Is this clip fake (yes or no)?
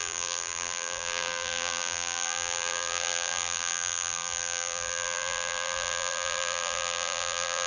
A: yes